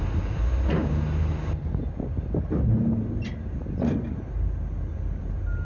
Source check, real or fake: real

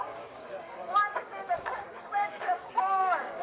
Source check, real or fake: fake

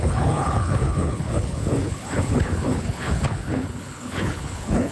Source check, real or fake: fake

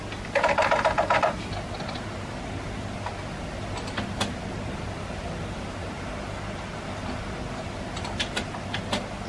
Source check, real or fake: real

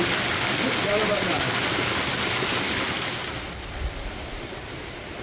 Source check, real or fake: real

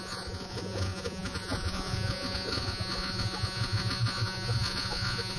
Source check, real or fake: fake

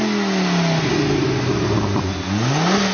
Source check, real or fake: real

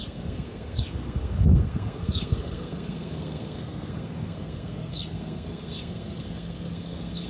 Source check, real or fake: fake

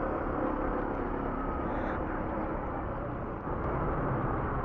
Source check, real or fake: real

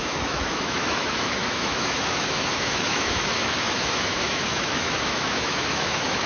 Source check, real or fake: fake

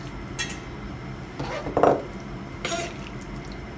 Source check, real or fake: real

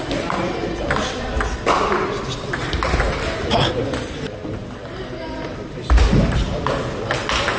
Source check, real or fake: real